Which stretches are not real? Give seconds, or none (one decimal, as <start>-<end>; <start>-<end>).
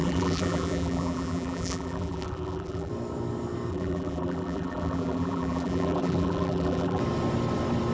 0.0-2.9; 3.7-7.0